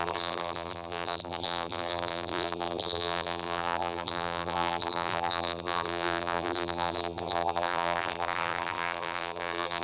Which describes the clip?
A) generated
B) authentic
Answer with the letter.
A